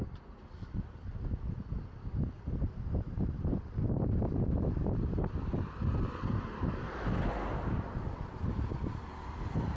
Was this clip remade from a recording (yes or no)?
no